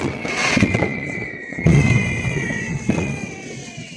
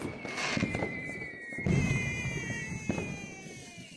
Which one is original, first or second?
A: second